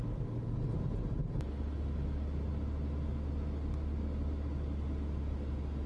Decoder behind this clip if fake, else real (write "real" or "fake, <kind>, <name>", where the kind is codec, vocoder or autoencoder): real